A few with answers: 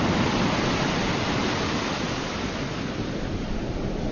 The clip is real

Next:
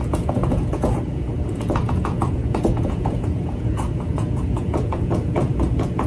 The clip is fake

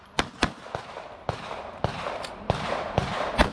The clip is fake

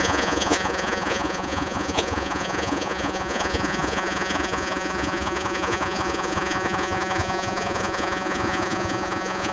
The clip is fake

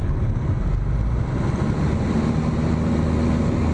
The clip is real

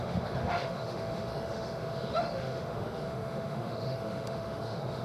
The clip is fake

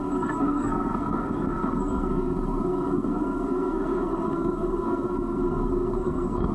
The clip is fake